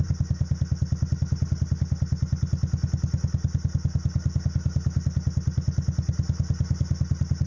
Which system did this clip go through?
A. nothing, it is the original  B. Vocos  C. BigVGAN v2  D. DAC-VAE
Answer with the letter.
A